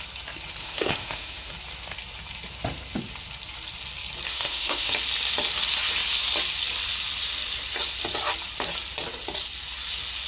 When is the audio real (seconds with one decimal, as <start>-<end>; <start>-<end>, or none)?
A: 0.0-0.6; 1.5-4.3; 4.9-10.3